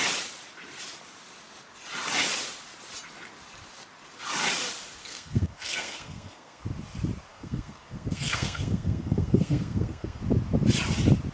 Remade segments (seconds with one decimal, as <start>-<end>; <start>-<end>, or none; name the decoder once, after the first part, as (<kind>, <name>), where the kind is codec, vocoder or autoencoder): 5.0-6.6 (codec, SNAC); 7.3-10.2